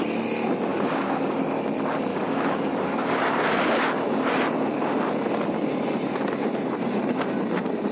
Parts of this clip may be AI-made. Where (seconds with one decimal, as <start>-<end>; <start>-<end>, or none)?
0.7-1.4; 2.1-3.2